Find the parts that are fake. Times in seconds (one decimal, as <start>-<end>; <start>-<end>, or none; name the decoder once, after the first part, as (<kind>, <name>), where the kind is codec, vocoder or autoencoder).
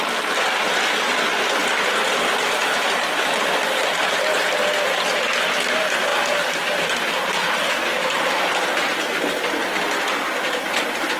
none